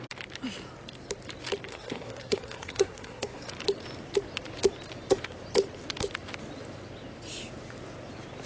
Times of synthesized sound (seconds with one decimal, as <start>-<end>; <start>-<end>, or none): 1.7-3.5